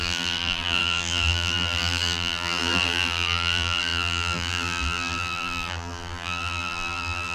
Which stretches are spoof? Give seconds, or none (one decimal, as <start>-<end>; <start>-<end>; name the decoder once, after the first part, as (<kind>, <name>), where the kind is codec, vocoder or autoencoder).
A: 0.0-7.3 (vocoder, BigVGAN v2)